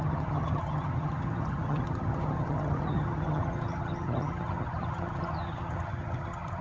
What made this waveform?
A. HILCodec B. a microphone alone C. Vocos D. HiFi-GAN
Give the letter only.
D